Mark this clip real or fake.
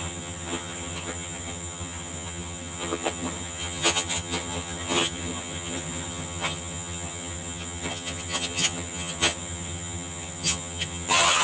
fake